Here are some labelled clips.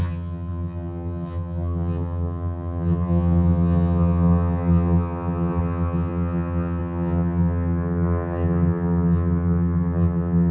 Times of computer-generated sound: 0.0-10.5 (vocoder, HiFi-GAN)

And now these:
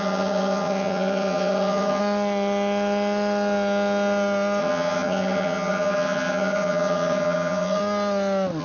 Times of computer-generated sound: 0.0-2.0 (vocoder, HiFi-GAN); 4.6-7.8